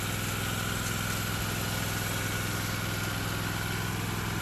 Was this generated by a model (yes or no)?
no